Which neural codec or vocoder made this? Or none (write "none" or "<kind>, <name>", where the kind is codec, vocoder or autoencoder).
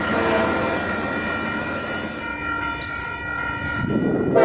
none